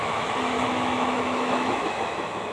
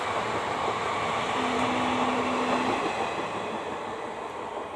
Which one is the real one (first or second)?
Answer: second